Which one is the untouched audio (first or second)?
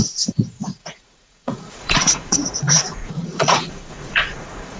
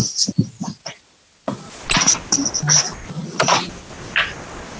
second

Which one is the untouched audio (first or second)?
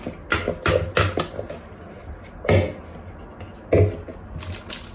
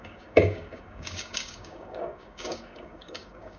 first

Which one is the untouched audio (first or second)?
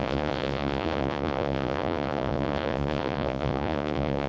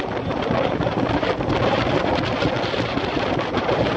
second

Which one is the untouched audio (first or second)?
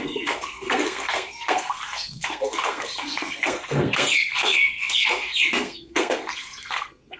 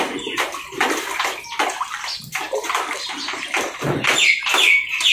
second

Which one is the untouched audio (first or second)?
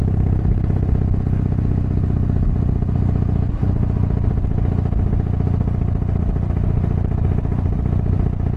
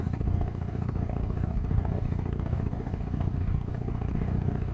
first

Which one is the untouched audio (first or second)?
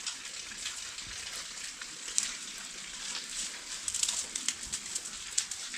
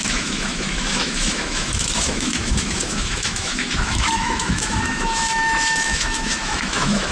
first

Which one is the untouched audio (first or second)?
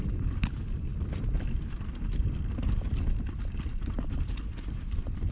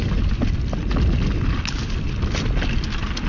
second